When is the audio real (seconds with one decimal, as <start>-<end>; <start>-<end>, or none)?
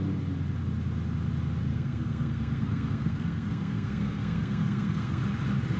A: 0.0-1.7; 5.2-5.8